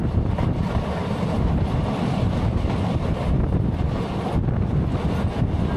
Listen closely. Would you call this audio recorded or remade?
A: recorded